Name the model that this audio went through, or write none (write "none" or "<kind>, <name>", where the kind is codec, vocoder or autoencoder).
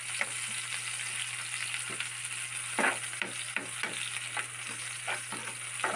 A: none